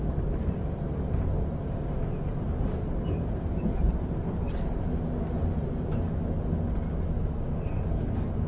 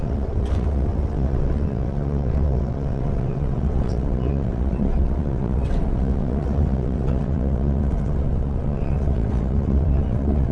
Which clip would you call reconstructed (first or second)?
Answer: second